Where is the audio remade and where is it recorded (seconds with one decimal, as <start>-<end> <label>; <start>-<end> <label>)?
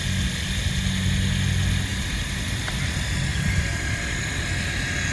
0.0-1.9 recorded; 1.9-2.8 remade; 2.8-3.3 recorded; 3.3-4.5 remade; 4.5-5.1 recorded